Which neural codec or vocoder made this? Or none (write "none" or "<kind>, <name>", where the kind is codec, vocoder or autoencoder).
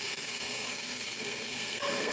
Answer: codec, SNAC